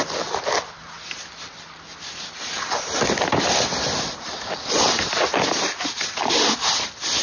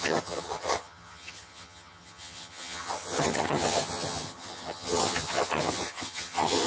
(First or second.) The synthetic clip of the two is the second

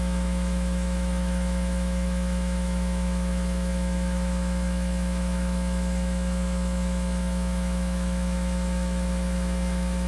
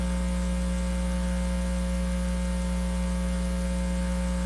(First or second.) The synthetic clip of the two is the first